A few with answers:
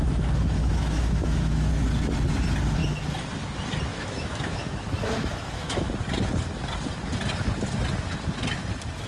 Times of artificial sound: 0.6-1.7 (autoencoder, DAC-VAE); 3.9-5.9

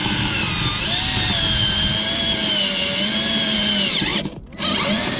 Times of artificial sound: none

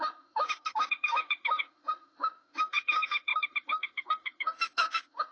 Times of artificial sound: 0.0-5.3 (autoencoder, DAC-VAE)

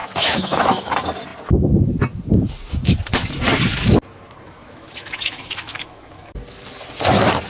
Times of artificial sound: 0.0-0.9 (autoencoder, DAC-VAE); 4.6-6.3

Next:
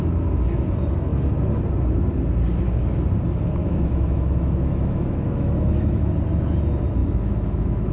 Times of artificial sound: 3.6-6.1 (autoencoder, DAC-VAE); 7.0-7.9

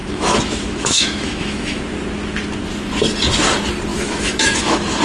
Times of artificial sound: 0.0-1.8 (autoencoder, DAC-VAE); 3.9-5.0